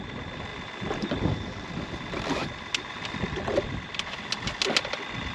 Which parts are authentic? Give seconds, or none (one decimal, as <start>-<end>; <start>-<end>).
0.0-5.3